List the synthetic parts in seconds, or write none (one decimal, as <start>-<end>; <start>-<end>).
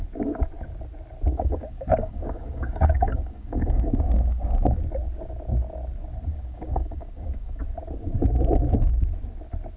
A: 1.3-4.8; 6.3-7.6